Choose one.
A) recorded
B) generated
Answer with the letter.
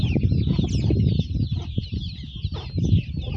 A